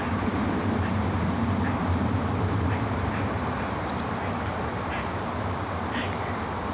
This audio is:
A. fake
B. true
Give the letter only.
A